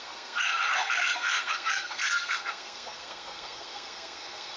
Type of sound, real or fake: fake